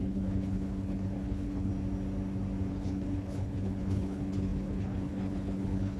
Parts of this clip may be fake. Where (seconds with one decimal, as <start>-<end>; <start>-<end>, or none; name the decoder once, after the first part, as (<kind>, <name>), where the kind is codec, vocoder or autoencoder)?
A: 0.0-1.7 (codec, HILCodec); 2.7-6.0